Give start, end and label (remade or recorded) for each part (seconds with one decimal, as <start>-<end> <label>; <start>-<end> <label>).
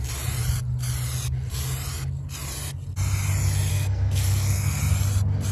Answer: 0.0-3.7 recorded; 3.7-4.8 remade; 4.8-5.5 recorded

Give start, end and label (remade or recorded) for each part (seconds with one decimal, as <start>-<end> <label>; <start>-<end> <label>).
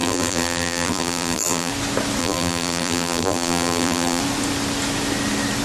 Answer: 0.0-1.7 remade; 1.7-2.2 recorded; 2.2-4.2 remade; 4.2-5.6 recorded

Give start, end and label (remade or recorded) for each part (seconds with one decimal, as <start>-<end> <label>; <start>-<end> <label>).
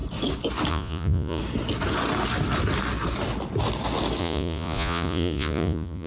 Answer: 0.0-0.7 recorded; 0.7-1.4 remade; 1.4-4.2 recorded; 4.2-6.1 remade